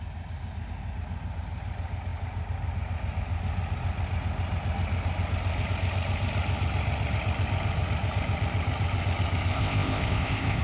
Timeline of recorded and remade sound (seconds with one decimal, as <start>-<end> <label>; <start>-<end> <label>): 0.0-9.5 recorded; 9.5-10.6 remade